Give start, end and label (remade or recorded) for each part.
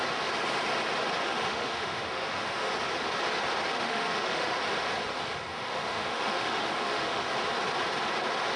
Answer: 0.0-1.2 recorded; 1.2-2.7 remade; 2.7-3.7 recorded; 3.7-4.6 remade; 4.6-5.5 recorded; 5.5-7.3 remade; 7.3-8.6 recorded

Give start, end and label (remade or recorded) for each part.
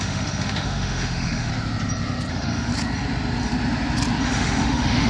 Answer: 0.0-1.5 remade; 1.5-2.3 recorded; 2.3-2.7 remade; 2.7-4.2 recorded; 4.2-5.1 remade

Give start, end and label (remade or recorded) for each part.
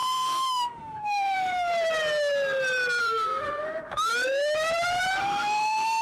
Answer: 0.0-1.7 remade; 1.7-3.0 recorded; 3.0-4.1 remade; 4.1-5.2 recorded; 5.2-6.0 remade